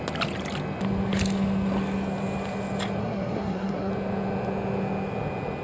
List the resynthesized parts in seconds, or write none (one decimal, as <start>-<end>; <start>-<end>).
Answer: 3.0-3.9